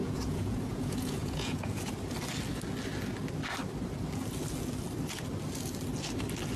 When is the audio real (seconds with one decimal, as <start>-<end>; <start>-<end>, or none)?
1.9-6.6